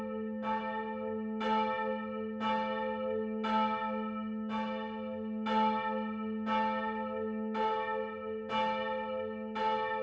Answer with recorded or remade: recorded